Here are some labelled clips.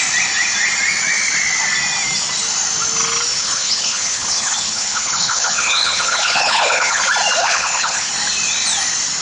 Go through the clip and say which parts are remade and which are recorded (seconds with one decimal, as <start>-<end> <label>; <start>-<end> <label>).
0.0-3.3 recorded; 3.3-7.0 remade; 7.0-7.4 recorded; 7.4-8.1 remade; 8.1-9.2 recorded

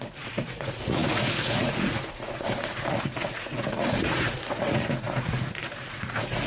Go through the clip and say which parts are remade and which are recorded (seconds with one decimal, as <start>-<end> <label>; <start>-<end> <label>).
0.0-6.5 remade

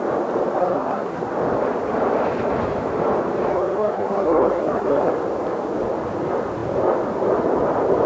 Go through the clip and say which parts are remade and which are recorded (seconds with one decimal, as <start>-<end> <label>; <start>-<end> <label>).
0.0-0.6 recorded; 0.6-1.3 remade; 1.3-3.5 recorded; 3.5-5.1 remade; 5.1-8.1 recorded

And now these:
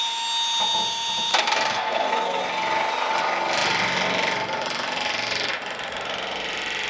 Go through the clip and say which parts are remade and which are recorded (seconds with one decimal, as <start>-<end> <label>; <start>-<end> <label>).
0.0-1.3 recorded; 1.3-2.4 remade; 2.4-6.9 recorded

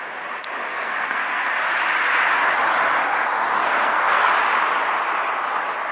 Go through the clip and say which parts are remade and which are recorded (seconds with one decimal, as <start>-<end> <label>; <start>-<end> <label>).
0.0-0.7 recorded; 0.7-1.5 remade; 1.5-3.3 recorded; 3.3-4.3 remade; 4.3-5.9 recorded